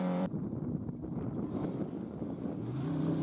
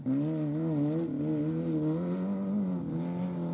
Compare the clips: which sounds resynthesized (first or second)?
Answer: first